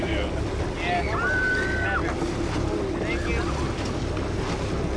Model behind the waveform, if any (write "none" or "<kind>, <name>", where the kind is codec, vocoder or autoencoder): none